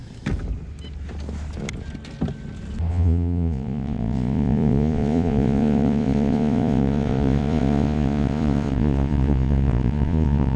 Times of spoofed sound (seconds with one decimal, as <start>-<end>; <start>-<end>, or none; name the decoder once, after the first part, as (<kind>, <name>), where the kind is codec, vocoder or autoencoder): 2.9-10.6 (vocoder, Vocos)